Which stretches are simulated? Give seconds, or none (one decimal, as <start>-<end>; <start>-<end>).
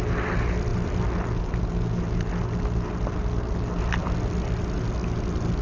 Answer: none